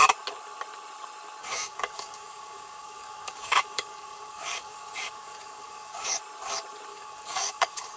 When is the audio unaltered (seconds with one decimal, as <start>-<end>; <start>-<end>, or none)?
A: 0.0-1.4; 6.2-6.9